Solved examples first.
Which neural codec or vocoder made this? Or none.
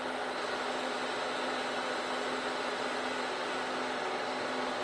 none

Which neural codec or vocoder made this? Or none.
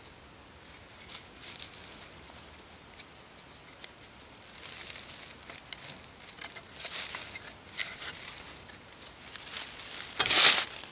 none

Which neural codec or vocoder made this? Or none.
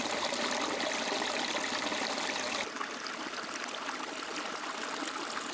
none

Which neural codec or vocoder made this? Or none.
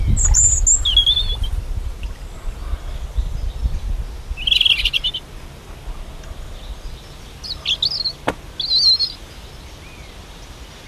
none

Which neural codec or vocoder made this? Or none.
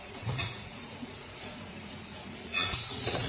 vocoder, Vocos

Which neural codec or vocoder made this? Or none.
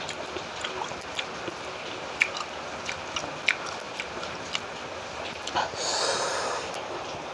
none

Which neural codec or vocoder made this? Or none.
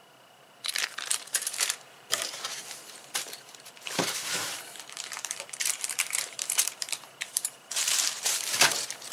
vocoder, BigVGAN v2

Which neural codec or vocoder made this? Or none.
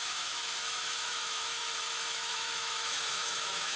autoencoder, DAC-VAE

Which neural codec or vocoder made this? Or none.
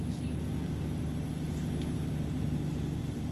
none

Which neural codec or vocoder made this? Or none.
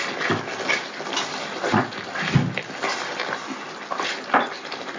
none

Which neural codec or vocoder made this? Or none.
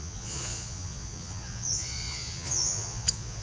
vocoder, Vocos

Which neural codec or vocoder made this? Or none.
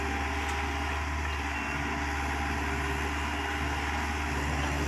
none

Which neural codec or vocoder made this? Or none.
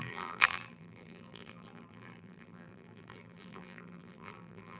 vocoder, BigVGAN v2